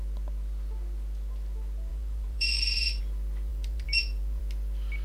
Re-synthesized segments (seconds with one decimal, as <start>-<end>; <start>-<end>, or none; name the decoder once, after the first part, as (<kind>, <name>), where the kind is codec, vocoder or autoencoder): 1.9-3.0 (vocoder, BigVGAN v2); 3.5-4.4